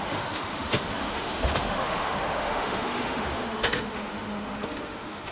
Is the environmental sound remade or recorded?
remade